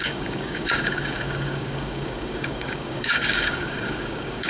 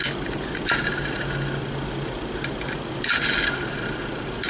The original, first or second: second